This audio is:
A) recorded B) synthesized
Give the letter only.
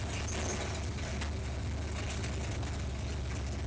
A